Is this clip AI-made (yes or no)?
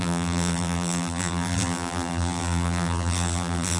yes